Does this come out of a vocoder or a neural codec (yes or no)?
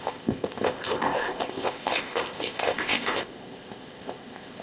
yes